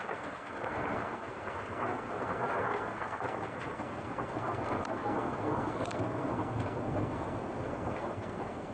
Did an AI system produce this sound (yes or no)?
yes